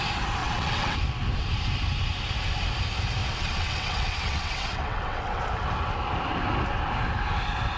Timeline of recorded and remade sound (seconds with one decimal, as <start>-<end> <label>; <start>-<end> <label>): 0.0-0.4 recorded; 0.4-1.0 remade; 1.0-3.2 recorded; 3.2-5.4 remade; 5.4-7.8 recorded